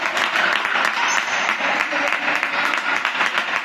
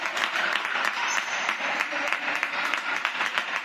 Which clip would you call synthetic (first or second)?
second